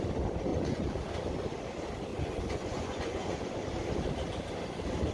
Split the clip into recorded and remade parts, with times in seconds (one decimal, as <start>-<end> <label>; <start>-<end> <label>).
0.0-0.5 recorded; 0.5-1.0 remade; 1.0-2.1 recorded; 2.1-3.6 remade; 3.6-5.1 recorded